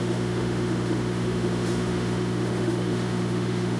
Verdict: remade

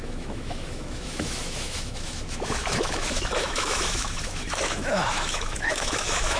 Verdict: remade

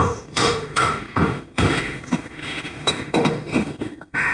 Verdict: remade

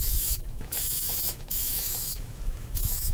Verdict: remade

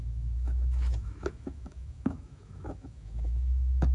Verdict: remade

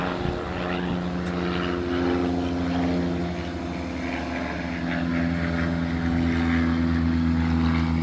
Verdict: recorded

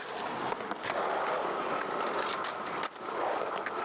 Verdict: recorded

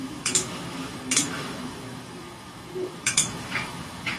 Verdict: remade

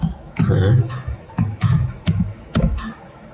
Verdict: remade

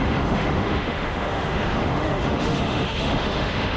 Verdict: remade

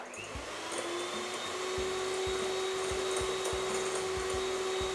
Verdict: recorded